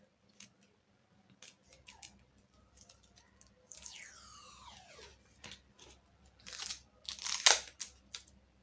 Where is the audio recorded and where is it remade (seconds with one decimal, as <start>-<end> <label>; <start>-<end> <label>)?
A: 0.0-8.6 recorded